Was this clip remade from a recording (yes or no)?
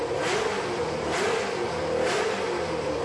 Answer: no